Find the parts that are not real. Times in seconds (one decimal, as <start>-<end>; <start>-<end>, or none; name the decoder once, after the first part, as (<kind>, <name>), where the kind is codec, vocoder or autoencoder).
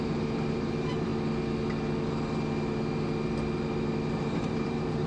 0.0-1.1 (vocoder, BigVGAN v2); 4.1-5.1